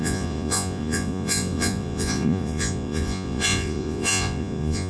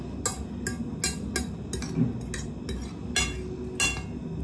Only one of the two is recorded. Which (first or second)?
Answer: second